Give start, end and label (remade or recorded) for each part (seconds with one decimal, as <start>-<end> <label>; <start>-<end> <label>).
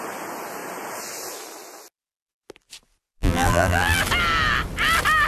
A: 0.0-3.2 recorded; 3.2-4.0 remade; 4.0-5.3 recorded